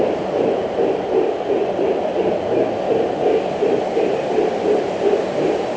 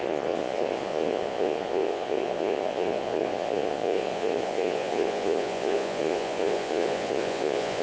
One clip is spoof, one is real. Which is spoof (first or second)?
second